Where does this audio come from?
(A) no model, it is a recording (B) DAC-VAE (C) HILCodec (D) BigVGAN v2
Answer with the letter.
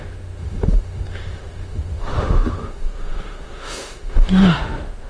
B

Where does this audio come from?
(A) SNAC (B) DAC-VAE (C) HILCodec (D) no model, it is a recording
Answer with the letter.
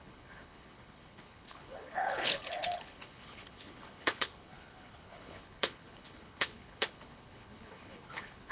C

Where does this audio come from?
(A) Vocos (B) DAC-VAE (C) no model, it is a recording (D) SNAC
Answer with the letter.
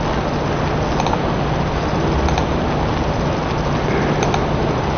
C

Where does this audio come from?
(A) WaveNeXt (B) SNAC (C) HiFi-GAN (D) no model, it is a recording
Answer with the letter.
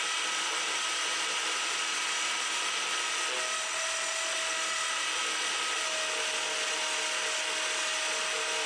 D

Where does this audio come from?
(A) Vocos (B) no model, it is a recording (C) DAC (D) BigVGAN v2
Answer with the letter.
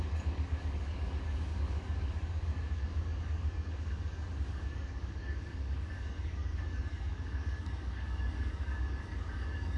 C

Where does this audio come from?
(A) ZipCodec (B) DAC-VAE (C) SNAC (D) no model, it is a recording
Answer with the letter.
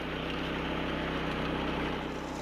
D